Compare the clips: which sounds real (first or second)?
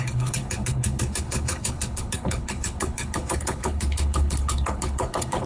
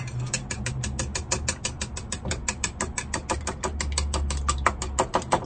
second